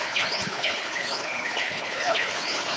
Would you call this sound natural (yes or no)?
no